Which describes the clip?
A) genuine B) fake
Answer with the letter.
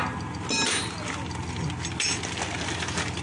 A